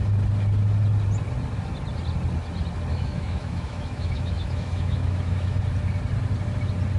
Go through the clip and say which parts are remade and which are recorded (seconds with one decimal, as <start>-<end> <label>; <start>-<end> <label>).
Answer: 0.0-2.9 recorded; 2.9-5.6 remade; 5.6-7.0 recorded